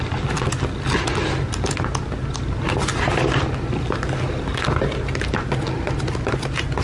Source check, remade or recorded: recorded